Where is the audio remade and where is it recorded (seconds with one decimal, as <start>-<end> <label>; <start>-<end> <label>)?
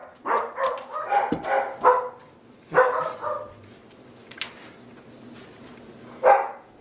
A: 0.0-3.8 remade; 3.8-6.8 recorded